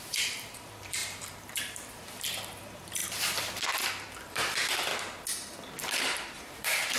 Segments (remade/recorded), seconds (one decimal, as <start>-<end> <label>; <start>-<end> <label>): 0.0-4.9 remade; 4.9-6.0 recorded; 6.0-7.0 remade